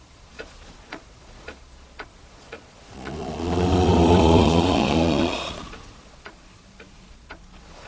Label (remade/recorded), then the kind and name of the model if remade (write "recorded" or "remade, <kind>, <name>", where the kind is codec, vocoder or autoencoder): remade, vocoder, Vocos